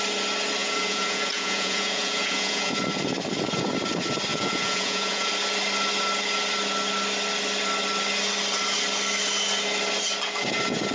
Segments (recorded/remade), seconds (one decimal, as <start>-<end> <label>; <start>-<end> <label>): 0.0-0.6 recorded; 0.6-2.7 remade; 2.7-4.3 recorded; 4.3-5.3 remade; 5.3-10.9 recorded